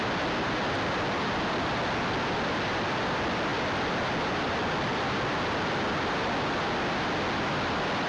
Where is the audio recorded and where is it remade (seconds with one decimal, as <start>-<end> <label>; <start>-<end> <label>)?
0.0-8.1 recorded